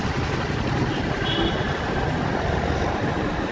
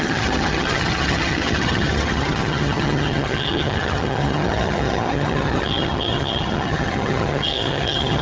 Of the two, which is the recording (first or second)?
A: first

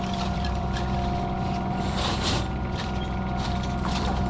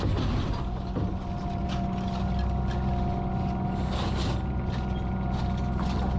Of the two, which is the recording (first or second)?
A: second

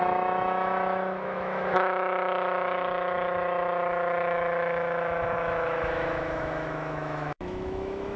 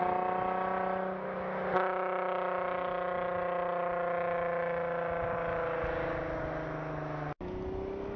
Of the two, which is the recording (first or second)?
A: second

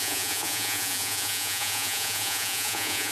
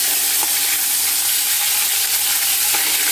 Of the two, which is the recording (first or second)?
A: second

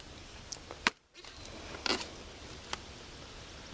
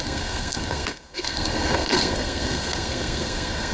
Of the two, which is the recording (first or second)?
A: first